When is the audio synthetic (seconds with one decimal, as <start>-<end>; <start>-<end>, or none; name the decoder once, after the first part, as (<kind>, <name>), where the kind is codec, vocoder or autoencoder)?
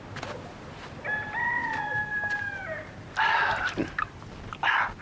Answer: 2.1-4.2 (vocoder, BigVGAN v2)